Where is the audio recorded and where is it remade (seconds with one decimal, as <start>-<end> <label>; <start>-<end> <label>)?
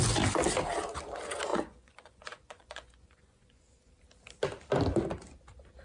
0.0-1.5 recorded; 1.5-3.9 remade; 3.9-5.8 recorded